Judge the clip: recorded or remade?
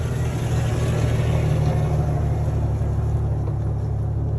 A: recorded